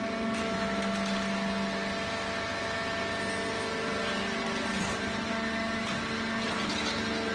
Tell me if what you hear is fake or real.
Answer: real